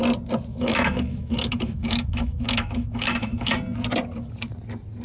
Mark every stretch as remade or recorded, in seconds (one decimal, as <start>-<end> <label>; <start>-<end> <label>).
0.0-0.5 recorded; 0.5-3.5 remade; 3.5-5.0 recorded